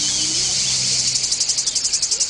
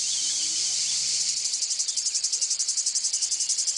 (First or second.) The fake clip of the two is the second